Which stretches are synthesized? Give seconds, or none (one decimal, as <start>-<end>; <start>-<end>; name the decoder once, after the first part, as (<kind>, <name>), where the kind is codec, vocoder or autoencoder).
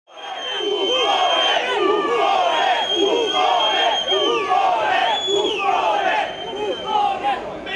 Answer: none